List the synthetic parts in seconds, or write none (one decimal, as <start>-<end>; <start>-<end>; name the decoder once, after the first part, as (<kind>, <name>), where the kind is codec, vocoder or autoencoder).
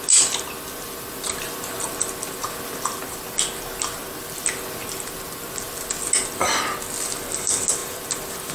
none